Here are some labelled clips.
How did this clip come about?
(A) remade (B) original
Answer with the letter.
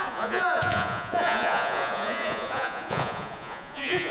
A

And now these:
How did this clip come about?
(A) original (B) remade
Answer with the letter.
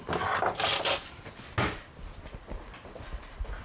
A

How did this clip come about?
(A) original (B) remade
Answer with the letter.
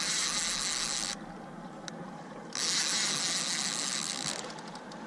A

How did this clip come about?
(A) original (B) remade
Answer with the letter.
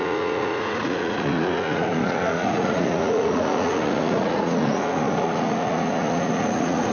B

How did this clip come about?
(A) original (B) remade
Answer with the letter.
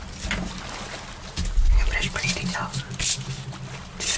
A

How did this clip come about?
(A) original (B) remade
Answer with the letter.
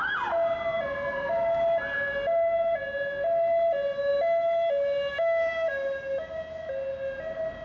A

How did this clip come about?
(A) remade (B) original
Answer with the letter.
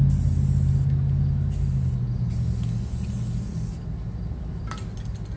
B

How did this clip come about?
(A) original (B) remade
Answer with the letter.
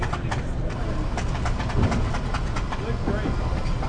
A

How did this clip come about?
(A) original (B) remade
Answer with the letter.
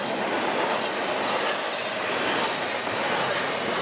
A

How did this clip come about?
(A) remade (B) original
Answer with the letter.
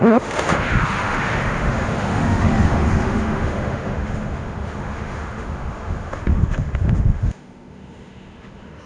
A